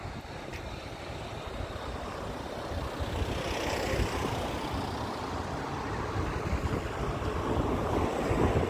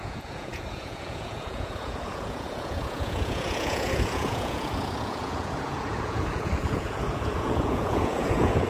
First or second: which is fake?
second